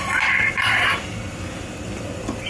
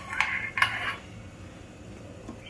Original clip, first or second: second